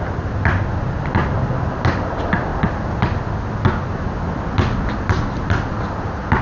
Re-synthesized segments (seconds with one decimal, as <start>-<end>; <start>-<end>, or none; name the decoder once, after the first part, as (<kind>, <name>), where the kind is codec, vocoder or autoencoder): none